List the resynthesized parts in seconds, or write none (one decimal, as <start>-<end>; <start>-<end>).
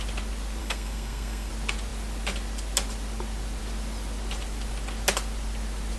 0.6-1.5